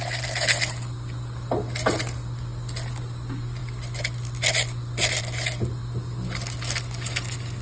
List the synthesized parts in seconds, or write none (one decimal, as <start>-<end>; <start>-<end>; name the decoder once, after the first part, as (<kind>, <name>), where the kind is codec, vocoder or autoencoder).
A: none

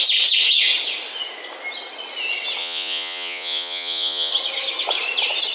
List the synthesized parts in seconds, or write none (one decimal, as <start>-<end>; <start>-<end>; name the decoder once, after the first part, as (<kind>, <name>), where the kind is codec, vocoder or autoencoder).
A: 2.6-4.3 (vocoder, Vocos)